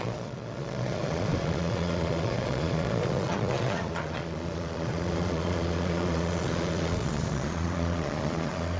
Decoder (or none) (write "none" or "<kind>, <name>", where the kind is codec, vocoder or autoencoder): vocoder, Vocos